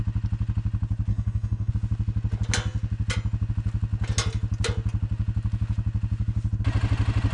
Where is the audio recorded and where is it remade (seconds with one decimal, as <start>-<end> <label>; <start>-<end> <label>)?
0.0-1.1 recorded; 1.1-1.7 remade; 1.7-7.3 recorded